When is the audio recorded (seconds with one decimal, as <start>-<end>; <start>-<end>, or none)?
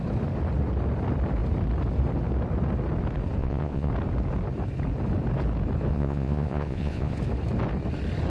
0.0-3.4; 3.9-5.9; 7.2-8.3